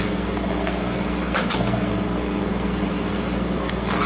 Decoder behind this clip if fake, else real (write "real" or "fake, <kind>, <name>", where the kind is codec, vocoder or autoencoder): fake, codec, SNAC